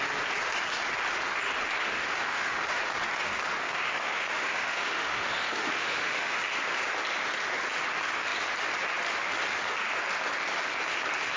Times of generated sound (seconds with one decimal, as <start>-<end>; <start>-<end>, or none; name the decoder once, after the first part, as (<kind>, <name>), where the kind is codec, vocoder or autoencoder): 2.0-2.8 (autoencoder, DAC-VAE); 3.6-6.4